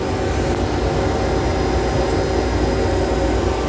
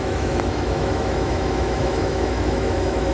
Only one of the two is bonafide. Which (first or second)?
first